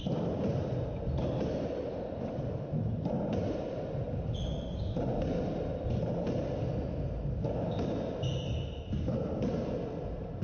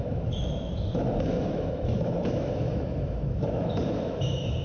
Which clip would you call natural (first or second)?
first